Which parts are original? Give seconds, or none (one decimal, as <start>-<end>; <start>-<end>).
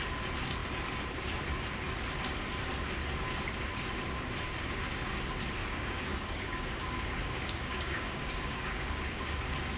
0.0-5.6; 9.4-9.8